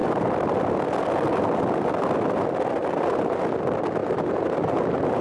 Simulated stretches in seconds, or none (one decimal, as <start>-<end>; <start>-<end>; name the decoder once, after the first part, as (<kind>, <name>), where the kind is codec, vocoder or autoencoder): 2.8-3.4 (vocoder, BigVGAN v2); 4.0-5.2